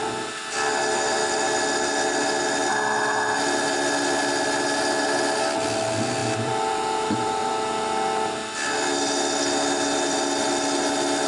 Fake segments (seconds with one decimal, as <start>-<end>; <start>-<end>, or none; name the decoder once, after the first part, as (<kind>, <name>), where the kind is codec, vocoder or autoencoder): 6.2-7.5 (vocoder, BigVGAN v2)